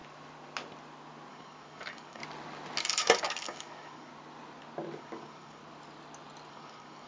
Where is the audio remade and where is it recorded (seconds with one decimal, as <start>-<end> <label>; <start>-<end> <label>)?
0.0-1.3 recorded; 1.3-2.2 remade; 2.2-2.8 recorded; 2.8-4.1 remade; 4.1-5.0 recorded; 5.0-5.6 remade; 5.6-6.5 recorded; 6.5-7.1 remade

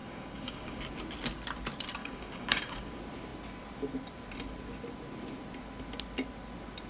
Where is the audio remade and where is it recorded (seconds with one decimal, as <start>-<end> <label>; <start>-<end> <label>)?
0.0-0.8 remade; 0.8-2.0 recorded; 2.0-2.9 remade; 2.9-6.9 recorded